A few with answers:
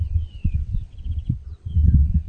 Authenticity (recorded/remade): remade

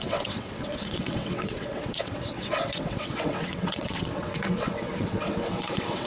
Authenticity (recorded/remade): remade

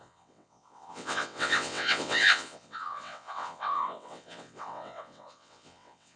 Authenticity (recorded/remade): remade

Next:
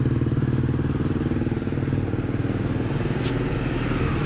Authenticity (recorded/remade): recorded